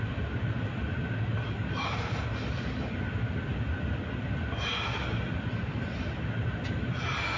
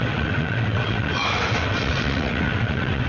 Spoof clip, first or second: second